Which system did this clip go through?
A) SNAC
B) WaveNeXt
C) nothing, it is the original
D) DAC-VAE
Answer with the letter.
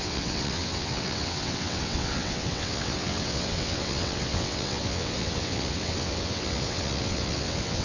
B